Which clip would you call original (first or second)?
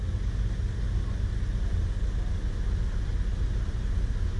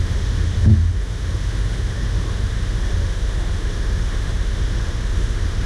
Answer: first